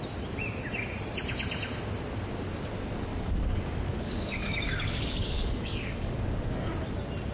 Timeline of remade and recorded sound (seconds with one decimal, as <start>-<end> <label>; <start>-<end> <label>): 0.0-3.1 recorded; 3.1-6.7 remade; 6.7-7.3 recorded